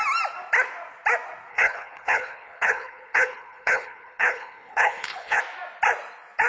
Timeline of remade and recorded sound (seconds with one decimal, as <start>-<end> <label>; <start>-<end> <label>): 0.0-1.5 recorded; 1.5-5.4 remade; 5.4-6.5 recorded